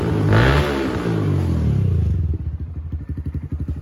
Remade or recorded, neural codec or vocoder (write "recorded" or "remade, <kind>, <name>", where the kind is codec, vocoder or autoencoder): recorded